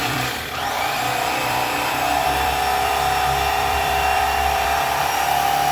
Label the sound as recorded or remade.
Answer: remade